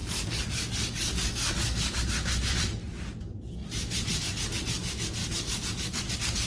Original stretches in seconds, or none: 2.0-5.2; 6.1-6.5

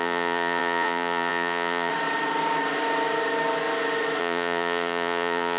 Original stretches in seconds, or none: 1.9-4.2

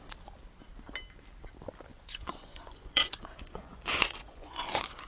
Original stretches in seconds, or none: 0.0-1.9

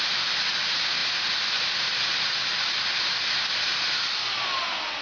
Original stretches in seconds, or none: 0.0-5.0

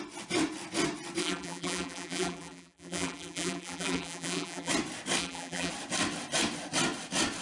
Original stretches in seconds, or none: 0.0-1.2; 4.7-5.2; 5.7-7.4

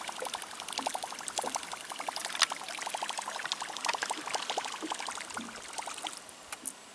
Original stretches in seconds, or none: 0.0-6.9

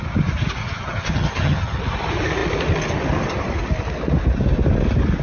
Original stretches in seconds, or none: 0.0-0.6; 1.8-5.2

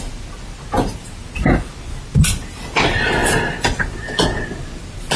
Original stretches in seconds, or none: 0.0-5.2